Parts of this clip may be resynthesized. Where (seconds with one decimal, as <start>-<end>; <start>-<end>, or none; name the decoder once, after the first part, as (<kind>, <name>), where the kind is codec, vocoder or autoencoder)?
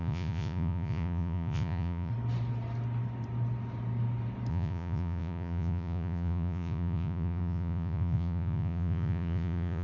0.0-2.1 (vocoder, Vocos); 4.5-9.8